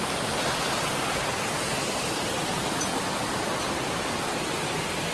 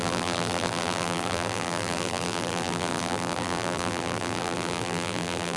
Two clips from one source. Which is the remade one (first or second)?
second